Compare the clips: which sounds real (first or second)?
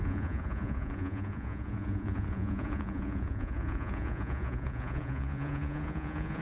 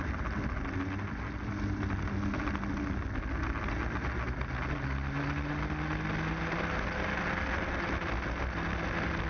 second